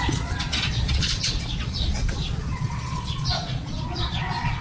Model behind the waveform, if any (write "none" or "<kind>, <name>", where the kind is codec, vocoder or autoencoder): vocoder, Vocos